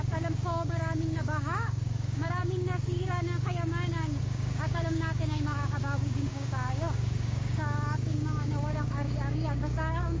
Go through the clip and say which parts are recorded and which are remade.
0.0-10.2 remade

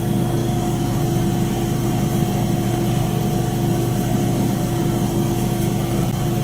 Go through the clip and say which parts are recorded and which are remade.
0.0-0.4 recorded; 0.4-1.0 remade; 1.0-4.2 recorded; 4.2-4.8 remade; 4.8-6.4 recorded

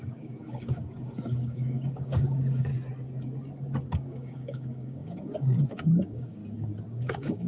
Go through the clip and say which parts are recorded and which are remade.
0.0-2.7 remade; 2.7-3.9 recorded; 3.9-6.4 remade; 6.4-6.9 recorded; 6.9-7.5 remade

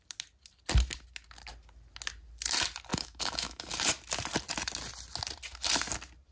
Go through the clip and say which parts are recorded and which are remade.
0.0-2.9 recorded; 2.9-3.6 remade; 3.6-6.3 recorded

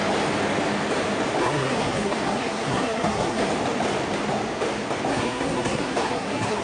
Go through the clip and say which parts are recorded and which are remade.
0.0-1.4 recorded; 1.4-3.5 remade; 3.5-5.1 recorded; 5.1-6.6 remade

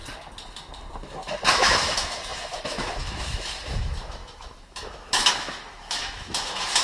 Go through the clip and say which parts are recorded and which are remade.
0.0-1.5 recorded; 1.5-6.8 remade

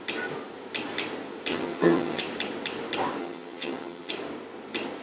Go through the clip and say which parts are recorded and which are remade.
0.0-1.5 recorded; 1.5-2.2 remade; 2.2-3.2 recorded; 3.2-4.1 remade; 4.1-5.0 recorded